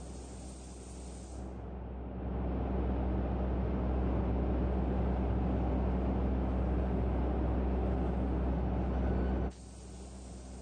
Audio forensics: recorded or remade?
recorded